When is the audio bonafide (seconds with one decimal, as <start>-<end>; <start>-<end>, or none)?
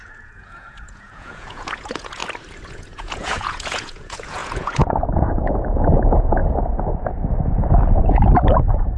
2.2-2.7; 6.4-9.0